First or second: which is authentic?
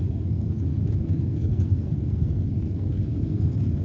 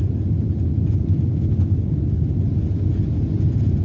second